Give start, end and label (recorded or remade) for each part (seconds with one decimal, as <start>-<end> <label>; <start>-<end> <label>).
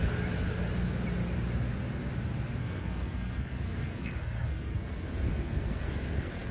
0.0-2.6 recorded; 2.6-6.5 remade